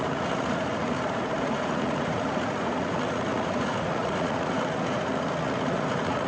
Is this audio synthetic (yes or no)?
yes